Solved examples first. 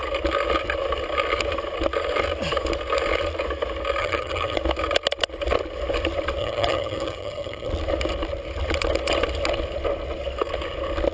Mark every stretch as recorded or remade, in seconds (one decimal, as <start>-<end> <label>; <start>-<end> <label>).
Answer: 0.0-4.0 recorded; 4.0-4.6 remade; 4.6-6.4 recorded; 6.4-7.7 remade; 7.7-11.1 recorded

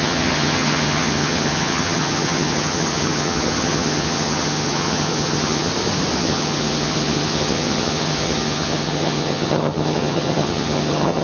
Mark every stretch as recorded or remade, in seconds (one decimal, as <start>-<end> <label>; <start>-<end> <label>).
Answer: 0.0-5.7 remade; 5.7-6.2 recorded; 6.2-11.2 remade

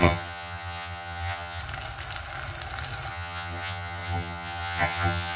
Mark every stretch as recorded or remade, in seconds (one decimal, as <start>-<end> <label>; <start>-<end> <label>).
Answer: 0.0-1.6 remade; 1.6-3.1 recorded; 3.1-5.4 remade